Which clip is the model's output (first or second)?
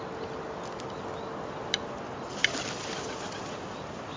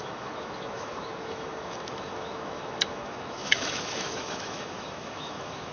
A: second